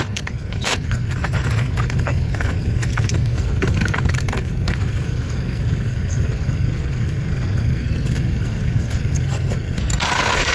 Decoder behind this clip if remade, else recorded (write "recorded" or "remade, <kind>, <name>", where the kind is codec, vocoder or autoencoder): remade, codec, SNAC